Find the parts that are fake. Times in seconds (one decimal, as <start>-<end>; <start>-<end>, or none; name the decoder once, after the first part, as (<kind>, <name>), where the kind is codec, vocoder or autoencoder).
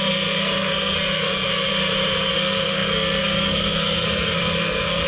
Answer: 0.0-1.7 (codec, SNAC); 2.3-5.1